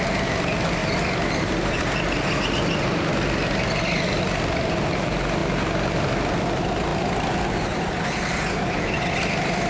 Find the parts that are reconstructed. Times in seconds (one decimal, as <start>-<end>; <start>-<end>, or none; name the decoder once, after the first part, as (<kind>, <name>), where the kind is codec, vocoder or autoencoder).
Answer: none